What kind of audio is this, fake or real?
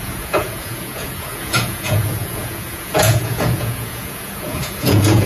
fake